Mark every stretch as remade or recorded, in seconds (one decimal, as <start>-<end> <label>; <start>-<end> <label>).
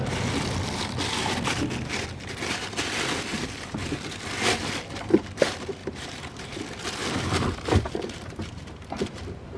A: 0.0-3.3 recorded; 3.3-4.2 remade; 4.2-5.8 recorded; 5.8-6.6 remade; 6.6-7.0 recorded; 7.0-9.6 remade